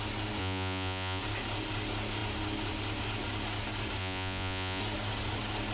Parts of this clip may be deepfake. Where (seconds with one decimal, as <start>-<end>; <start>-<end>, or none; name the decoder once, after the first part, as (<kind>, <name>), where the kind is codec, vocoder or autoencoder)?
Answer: 0.4-1.2 (vocoder, Vocos); 4.0-4.8